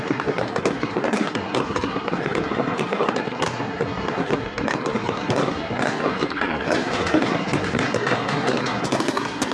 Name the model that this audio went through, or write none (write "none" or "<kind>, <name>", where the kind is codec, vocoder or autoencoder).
codec, SNAC